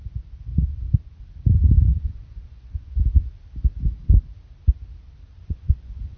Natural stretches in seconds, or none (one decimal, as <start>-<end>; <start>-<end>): 0.0-0.5; 1.2-1.9; 3.0-5.4